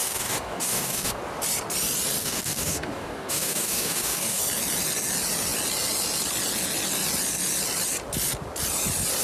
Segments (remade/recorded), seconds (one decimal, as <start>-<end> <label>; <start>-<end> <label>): 0.0-1.2 remade; 1.2-2.2 recorded; 2.2-4.4 remade; 4.4-9.2 recorded